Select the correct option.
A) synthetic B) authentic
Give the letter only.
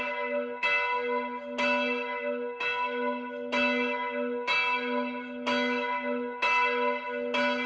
B